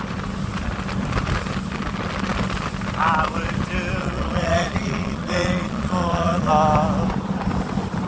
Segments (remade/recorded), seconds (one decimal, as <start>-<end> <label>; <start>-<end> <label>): 0.0-4.0 recorded; 4.0-6.5 remade; 6.5-8.1 recorded